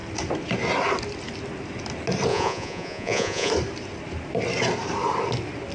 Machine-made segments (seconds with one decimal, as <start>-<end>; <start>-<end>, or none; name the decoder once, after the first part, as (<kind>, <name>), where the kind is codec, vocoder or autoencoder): 2.3-3.5 (vocoder, Vocos)